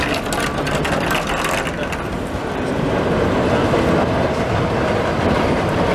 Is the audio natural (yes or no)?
yes